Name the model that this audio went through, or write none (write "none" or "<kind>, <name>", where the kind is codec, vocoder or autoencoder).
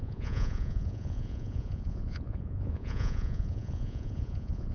vocoder, Vocos